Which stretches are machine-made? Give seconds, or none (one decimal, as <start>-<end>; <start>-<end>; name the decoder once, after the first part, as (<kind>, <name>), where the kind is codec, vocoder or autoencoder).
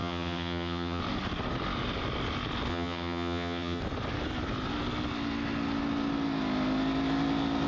0.0-1.0 (vocoder, HiFi-GAN); 2.7-3.8